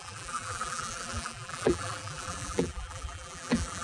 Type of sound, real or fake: fake